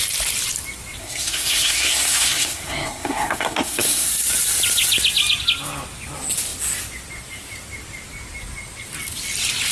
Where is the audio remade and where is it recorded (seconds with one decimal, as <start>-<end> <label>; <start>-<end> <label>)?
0.0-1.0 recorded; 1.0-4.1 remade; 4.1-9.7 recorded